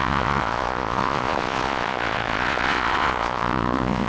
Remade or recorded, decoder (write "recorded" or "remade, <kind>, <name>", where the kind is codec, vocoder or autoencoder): remade, vocoder, Vocos